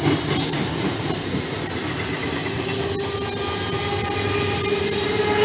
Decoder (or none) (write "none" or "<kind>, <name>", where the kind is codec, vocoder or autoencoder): none